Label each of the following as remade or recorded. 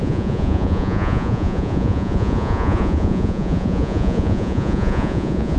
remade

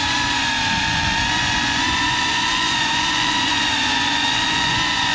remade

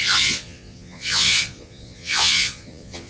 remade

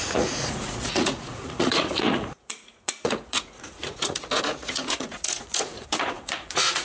remade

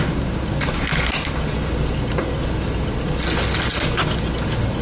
recorded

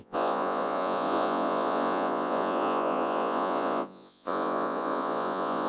remade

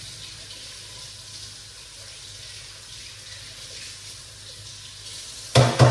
recorded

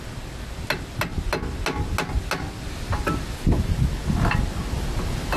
recorded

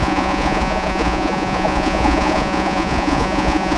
remade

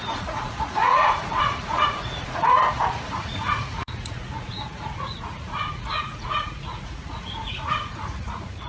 remade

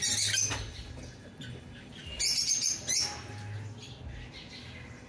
recorded